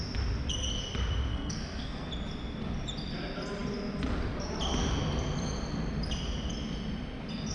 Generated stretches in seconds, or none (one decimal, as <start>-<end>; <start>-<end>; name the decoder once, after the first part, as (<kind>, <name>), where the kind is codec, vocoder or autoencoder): 1.3-2.1 (codec, SNAC)